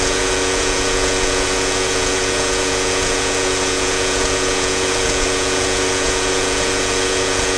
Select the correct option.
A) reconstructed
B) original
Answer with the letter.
A